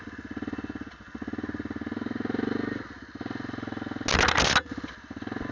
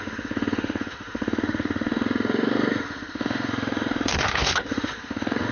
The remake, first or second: second